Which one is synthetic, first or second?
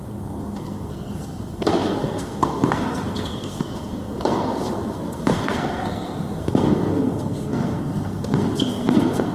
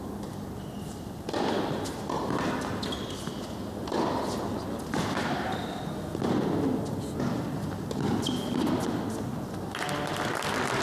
first